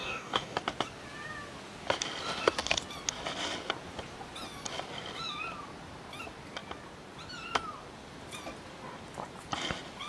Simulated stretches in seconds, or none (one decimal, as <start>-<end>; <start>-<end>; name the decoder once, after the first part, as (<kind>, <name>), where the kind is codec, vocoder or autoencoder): 0.0-0.6 (codec, DAC)